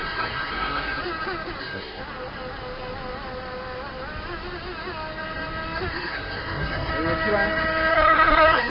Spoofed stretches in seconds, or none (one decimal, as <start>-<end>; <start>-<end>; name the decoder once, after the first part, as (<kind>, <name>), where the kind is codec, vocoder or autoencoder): 0.0-1.0 (codec, SNAC); 1.6-2.0; 5.9-6.9; 7.9-8.7

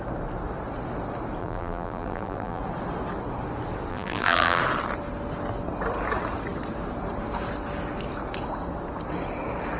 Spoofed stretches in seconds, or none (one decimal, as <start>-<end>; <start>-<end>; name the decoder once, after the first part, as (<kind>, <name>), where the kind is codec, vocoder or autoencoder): 1.4-2.6 (vocoder, BigVGAN v2); 3.9-4.6